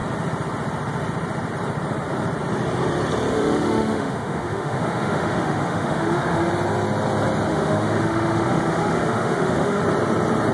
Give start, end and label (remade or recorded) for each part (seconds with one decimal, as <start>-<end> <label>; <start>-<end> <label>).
0.0-3.3 recorded; 3.3-6.5 remade; 6.5-7.5 recorded; 7.5-9.8 remade; 9.8-10.5 recorded